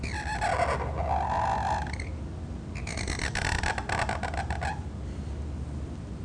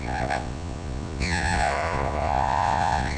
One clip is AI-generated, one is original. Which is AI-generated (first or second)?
second